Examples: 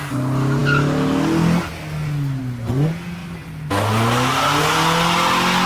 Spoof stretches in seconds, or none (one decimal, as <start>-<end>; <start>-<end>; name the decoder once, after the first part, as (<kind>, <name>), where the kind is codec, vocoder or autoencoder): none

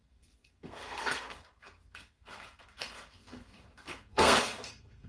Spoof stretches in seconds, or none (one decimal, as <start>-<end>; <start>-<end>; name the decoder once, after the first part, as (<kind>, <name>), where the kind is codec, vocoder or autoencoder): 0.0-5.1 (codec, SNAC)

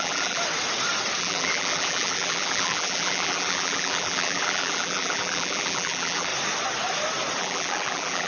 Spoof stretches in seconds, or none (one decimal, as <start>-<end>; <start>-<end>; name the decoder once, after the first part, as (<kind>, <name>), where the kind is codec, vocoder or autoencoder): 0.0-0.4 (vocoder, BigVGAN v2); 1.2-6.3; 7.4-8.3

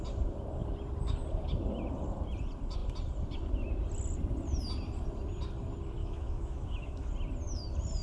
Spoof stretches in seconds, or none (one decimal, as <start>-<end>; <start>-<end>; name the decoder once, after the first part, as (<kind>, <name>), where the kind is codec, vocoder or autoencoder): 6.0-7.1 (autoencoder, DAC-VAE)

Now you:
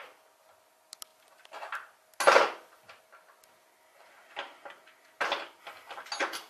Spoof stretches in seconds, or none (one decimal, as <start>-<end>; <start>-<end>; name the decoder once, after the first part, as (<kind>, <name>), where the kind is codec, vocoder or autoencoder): none

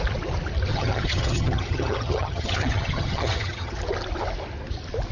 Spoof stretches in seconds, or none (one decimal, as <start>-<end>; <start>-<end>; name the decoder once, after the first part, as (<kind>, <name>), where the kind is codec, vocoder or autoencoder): 0.7-3.8 (vocoder, HiFi-GAN)

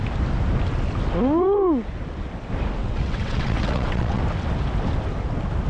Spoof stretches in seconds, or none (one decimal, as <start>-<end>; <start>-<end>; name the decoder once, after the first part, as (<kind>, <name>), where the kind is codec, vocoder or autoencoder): 2.8-4.2 (vocoder, WaveNeXt)